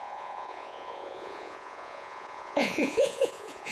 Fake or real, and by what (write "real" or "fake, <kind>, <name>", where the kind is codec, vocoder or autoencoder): fake, vocoder, Vocos